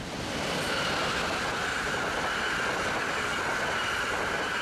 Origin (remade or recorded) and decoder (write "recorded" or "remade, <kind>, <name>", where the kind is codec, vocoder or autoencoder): recorded